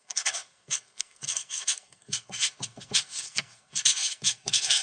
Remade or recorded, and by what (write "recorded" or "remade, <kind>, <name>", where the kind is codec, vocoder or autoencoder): remade, codec, SNAC